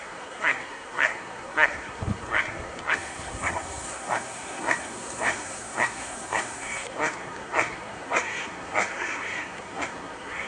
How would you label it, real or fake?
fake